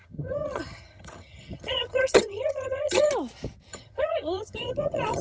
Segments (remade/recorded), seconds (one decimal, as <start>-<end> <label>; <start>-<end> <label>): 0.0-3.1 remade; 3.1-3.7 recorded; 3.7-5.2 remade